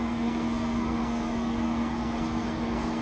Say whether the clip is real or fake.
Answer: fake